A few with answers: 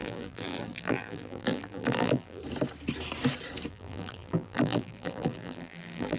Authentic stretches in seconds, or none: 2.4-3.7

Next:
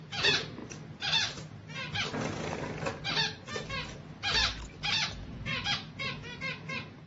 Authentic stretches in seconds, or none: 0.6-4.9